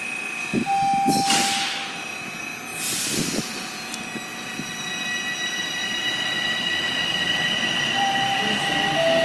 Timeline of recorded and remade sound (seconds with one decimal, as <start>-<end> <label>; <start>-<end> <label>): 0.0-4.3 recorded; 4.3-4.9 remade; 4.9-5.8 recorded; 5.8-8.7 remade; 8.7-9.2 recorded